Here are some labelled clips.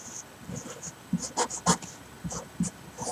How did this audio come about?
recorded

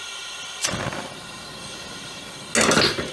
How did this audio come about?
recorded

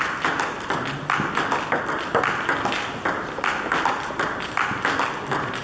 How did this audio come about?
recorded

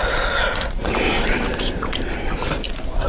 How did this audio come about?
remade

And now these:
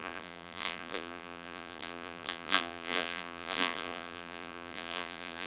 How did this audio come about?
remade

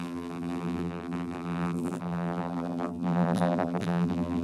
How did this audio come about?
remade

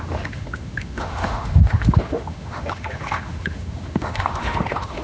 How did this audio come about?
remade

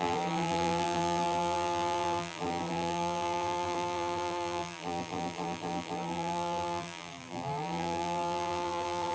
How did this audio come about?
remade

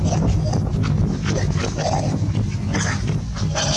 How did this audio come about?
recorded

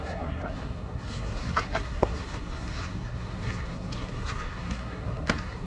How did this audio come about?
remade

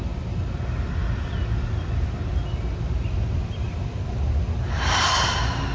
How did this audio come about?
recorded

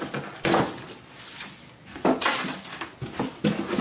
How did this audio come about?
recorded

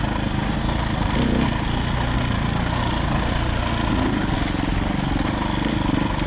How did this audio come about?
recorded